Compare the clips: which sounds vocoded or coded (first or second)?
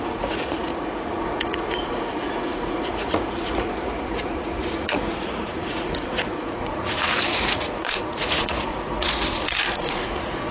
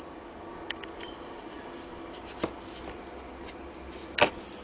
first